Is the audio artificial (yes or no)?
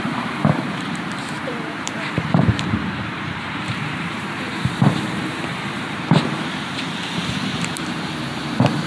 yes